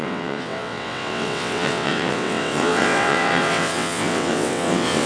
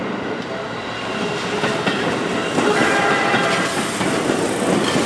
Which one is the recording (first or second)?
second